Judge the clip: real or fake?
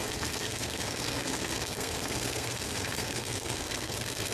fake